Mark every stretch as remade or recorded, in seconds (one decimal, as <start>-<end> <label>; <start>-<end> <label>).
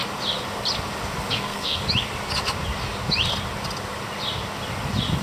0.0-1.3 recorded; 1.3-1.8 remade; 1.8-5.2 recorded